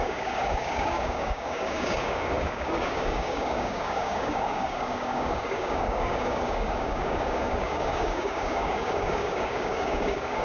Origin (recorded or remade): remade